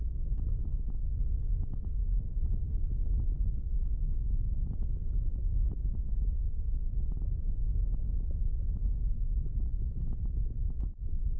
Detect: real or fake real